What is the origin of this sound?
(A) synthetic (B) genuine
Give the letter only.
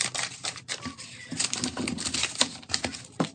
B